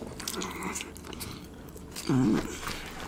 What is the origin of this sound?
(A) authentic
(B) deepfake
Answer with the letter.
A